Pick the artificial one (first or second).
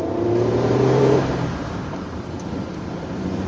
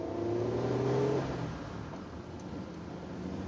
first